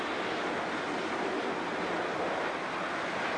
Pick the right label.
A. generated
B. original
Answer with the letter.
B